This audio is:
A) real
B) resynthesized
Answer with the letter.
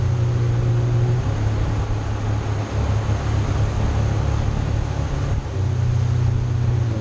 A